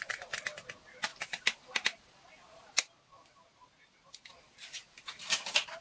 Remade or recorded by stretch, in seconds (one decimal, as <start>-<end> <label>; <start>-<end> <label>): 0.0-5.8 recorded

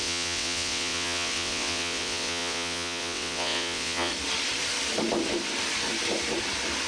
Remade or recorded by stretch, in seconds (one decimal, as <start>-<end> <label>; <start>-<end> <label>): 0.0-4.1 remade; 4.1-6.9 recorded

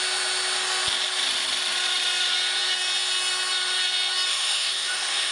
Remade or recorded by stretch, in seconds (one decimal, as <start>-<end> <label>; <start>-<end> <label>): 0.0-4.3 recorded; 4.3-5.3 remade

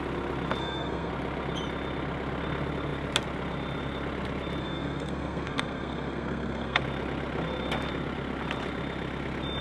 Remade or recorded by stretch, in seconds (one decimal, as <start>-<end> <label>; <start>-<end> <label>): 0.0-0.6 recorded; 0.6-1.1 remade; 1.1-4.6 recorded; 4.6-6.8 remade; 6.8-9.6 recorded